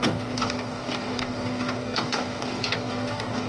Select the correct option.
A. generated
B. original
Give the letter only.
A